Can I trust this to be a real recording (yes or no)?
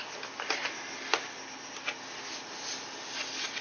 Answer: yes